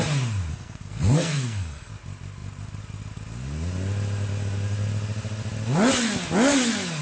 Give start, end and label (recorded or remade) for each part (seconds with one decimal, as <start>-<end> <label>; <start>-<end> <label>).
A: 0.0-0.5 recorded; 0.5-1.9 remade; 1.9-7.0 recorded